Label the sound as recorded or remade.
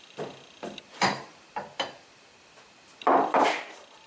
remade